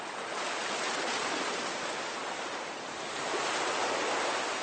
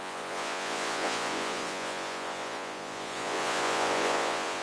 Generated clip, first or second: second